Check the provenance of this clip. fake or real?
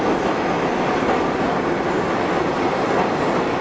real